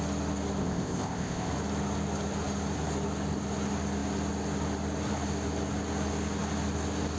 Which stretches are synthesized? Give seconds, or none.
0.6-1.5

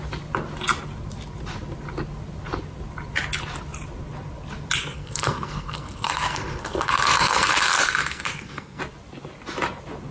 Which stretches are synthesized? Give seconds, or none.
4.8-8.8

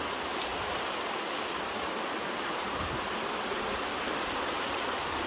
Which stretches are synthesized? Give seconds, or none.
0.5-3.6